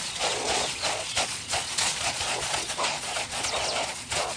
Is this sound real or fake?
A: fake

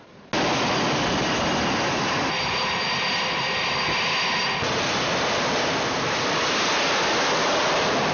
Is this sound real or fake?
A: real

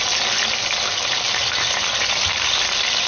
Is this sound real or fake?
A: real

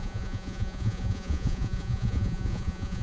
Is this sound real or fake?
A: fake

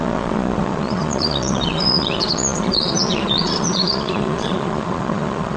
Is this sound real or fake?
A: fake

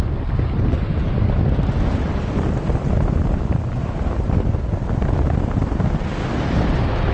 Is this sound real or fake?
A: real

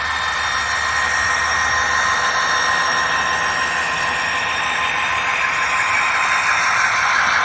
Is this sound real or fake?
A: real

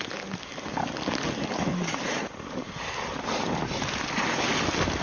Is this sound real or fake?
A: real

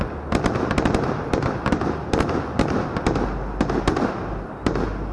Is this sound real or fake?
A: real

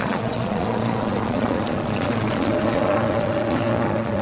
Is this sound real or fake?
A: fake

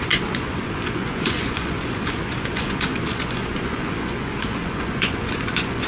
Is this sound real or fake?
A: fake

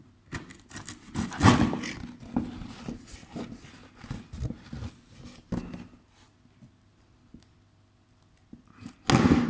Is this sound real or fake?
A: real